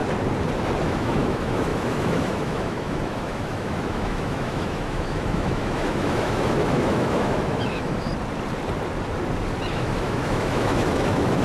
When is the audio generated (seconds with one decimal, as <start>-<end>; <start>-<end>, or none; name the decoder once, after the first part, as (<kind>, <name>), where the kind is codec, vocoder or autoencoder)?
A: 0.8-8.1 (autoencoder, DAC-VAE); 9.7-11.4